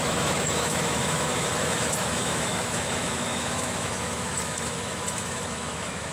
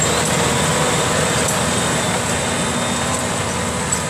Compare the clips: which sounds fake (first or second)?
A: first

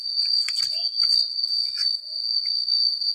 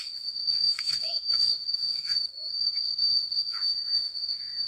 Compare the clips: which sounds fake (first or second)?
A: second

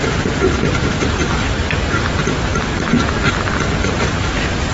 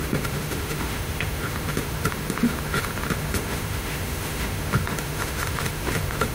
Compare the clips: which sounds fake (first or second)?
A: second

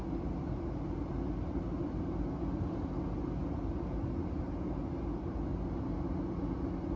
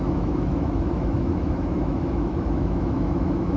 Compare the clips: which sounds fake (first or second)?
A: second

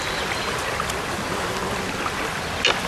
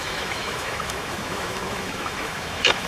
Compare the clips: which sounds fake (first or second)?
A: second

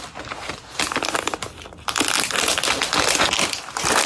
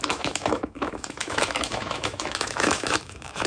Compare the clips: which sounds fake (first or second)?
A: second